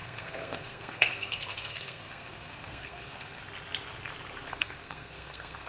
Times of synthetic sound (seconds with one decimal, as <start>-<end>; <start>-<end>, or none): 0.0-3.4; 4.5-5.7